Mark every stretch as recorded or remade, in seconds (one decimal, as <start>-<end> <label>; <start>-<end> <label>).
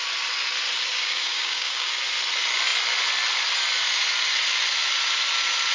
0.0-0.9 recorded; 0.9-2.0 remade; 2.0-5.7 recorded